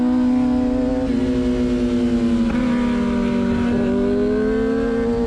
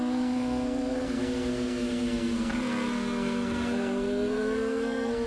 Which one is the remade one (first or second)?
second